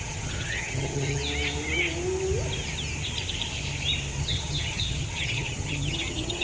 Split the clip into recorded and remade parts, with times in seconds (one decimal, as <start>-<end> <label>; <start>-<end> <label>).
0.0-1.2 remade; 1.2-4.2 recorded; 4.2-6.4 remade